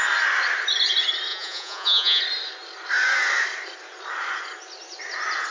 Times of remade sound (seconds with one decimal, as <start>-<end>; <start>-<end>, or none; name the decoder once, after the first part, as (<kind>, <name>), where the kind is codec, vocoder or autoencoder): 1.3-2.2 (vocoder, Vocos)